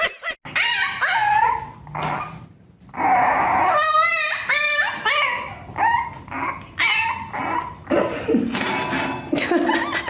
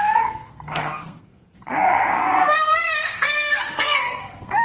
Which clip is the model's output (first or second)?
second